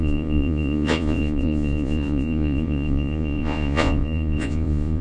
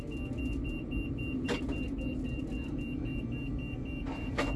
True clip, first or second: second